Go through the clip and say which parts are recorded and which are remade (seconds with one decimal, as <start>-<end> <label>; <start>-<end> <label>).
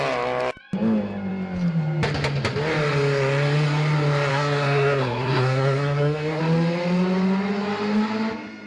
0.0-4.3 recorded; 4.3-6.4 remade; 6.4-8.7 recorded